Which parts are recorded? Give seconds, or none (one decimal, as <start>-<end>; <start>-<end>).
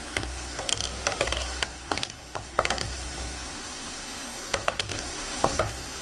0.7-1.2